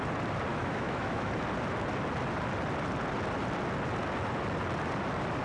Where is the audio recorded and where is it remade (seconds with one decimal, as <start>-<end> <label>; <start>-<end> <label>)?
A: 0.0-0.5 recorded; 0.5-1.3 remade; 1.3-5.4 recorded